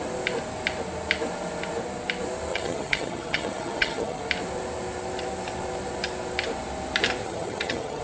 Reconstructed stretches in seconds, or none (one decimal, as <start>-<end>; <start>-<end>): 2.5-4.2; 7.2-8.0